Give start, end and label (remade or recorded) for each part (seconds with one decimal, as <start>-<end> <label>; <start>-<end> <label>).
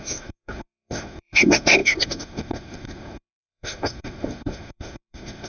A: 0.0-5.5 remade